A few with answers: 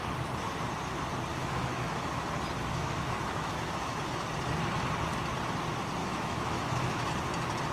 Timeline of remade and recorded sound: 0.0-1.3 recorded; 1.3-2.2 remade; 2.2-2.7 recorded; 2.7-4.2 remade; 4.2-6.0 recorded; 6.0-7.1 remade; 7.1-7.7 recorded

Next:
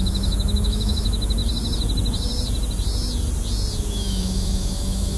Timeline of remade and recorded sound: 0.0-1.4 remade; 1.4-3.8 recorded; 3.8-5.2 remade

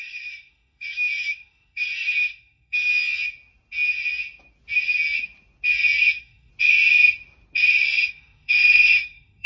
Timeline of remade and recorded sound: 0.0-2.9 remade; 2.9-6.0 recorded; 6.0-6.5 remade; 6.5-8.1 recorded; 8.1-9.5 remade

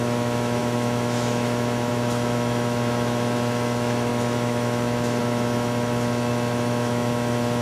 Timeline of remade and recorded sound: 0.0-7.6 remade

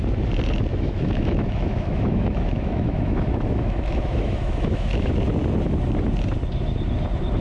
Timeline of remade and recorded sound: 0.0-0.7 recorded; 0.7-5.1 remade; 5.1-7.4 recorded